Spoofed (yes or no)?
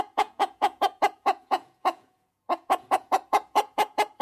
yes